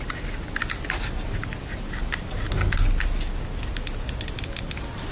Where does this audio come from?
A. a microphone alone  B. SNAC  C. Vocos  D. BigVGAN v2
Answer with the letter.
A